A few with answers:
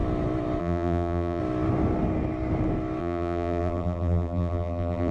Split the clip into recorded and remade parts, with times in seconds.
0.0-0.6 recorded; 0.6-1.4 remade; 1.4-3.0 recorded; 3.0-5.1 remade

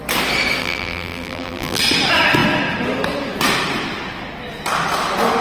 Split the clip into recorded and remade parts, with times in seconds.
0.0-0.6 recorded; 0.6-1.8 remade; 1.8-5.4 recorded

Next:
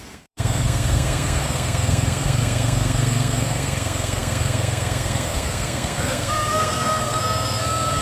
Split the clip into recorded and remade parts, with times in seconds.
0.0-8.0 remade

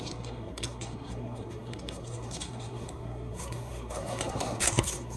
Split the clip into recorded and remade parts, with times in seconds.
0.0-5.2 remade